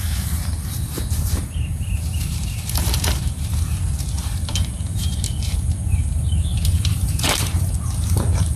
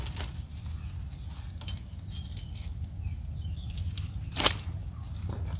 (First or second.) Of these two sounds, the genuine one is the second